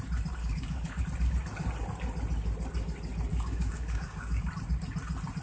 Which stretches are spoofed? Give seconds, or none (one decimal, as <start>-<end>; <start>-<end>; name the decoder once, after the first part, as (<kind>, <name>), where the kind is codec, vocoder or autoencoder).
0.4-1.0 (codec, DAC); 3.3-4.5